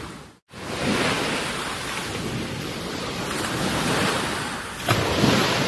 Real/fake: real